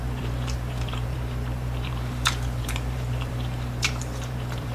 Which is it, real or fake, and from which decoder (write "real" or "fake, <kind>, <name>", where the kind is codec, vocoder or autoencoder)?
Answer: fake, vocoder, BigVGAN v2